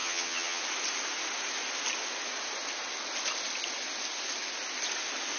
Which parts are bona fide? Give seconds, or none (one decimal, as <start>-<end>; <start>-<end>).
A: 0.6-5.4